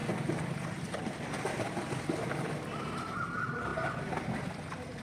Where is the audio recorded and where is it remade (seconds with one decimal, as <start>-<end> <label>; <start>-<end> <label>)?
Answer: 0.0-3.0 remade; 3.0-5.0 recorded